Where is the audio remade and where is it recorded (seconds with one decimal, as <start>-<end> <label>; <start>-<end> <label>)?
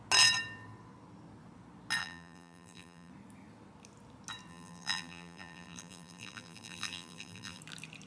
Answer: 0.0-2.0 recorded; 2.0-3.1 remade; 3.1-4.5 recorded; 4.5-7.6 remade; 7.6-8.1 recorded